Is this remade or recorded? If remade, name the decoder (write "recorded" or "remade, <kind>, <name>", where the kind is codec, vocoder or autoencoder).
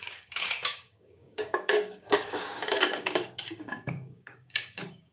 remade, codec, DAC